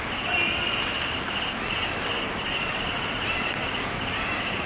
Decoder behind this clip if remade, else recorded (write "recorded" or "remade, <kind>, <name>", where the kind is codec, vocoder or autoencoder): recorded